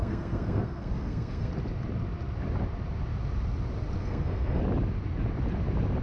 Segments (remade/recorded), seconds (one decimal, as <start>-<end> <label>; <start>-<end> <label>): 0.0-1.5 remade; 1.5-4.0 recorded; 4.0-4.6 remade; 4.6-6.0 recorded